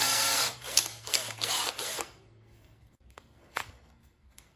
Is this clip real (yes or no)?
no